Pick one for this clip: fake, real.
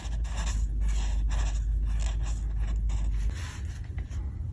real